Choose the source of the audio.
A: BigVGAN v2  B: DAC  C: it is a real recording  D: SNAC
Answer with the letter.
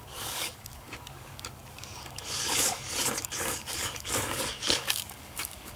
B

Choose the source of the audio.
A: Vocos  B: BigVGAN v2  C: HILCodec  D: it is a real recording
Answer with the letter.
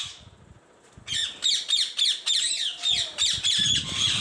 D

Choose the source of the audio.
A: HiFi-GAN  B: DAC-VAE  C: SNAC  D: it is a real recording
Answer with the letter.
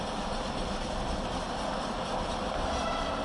D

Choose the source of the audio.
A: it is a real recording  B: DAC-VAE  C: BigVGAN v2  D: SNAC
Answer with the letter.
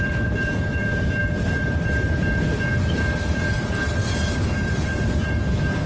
C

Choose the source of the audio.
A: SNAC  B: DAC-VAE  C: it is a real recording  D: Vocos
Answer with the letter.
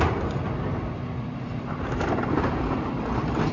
C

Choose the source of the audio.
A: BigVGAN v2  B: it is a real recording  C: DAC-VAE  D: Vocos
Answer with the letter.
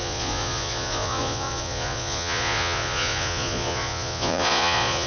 D